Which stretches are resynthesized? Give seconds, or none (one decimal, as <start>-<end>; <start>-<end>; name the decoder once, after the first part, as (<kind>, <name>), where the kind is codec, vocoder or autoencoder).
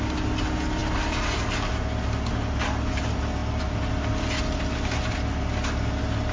none